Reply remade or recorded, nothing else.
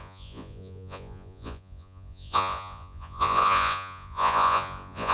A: remade